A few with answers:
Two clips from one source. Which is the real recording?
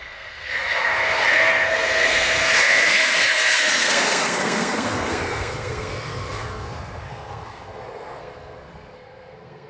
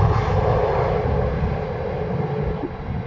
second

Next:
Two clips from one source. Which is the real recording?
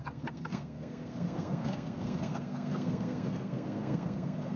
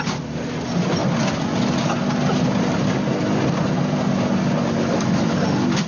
second